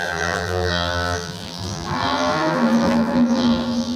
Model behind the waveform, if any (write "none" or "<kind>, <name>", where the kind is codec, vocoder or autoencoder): vocoder, BigVGAN v2